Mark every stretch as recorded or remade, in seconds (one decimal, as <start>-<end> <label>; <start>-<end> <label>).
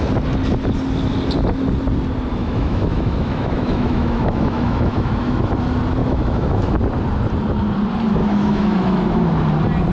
0.0-2.4 recorded; 2.4-5.4 remade; 5.4-6.0 recorded; 6.0-6.8 remade; 6.8-8.2 recorded; 8.2-9.3 remade; 9.3-9.9 recorded